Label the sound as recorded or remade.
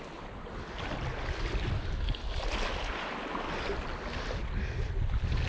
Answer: recorded